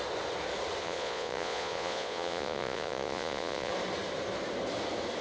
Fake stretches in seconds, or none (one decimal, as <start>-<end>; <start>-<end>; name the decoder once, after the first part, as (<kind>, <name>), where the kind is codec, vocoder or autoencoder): 0.8-3.7 (vocoder, Vocos)